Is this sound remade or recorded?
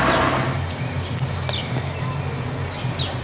recorded